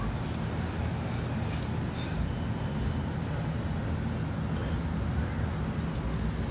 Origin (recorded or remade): recorded